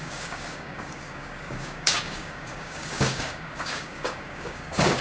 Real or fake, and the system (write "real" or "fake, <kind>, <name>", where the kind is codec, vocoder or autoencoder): fake, codec, DAC